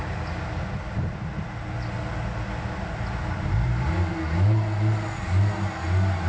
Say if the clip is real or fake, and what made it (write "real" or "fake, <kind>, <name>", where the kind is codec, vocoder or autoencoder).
real